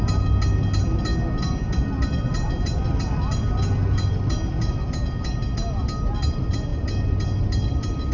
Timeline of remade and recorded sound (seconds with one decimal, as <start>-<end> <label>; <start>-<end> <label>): 0.0-8.1 recorded